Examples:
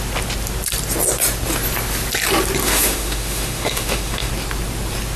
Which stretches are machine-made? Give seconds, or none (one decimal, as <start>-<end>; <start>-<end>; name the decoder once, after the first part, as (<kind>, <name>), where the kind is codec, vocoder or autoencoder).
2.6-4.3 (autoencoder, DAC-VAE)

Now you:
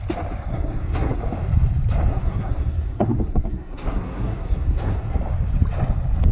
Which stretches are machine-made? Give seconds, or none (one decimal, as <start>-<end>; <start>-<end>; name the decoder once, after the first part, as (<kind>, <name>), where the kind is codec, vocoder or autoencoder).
0.5-1.2 (codec, SNAC); 2.1-5.2

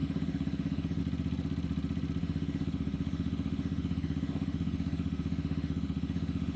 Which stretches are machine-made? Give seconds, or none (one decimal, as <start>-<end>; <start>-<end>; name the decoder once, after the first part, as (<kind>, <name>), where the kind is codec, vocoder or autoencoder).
0.0-1.0 (autoencoder, DAC-VAE); 2.2-6.6